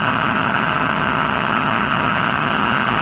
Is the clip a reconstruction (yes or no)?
yes